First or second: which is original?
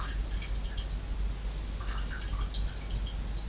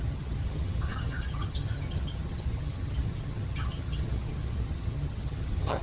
first